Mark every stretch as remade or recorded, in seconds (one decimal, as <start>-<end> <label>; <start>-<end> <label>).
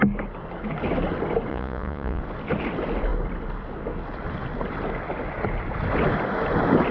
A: 0.0-1.5 recorded; 1.5-2.2 remade; 2.2-6.9 recorded